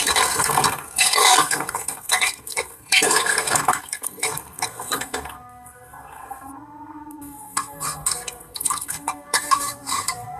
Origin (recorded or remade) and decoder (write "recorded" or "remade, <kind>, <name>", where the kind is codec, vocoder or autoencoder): remade, codec, SNAC